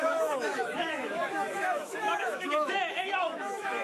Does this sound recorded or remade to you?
remade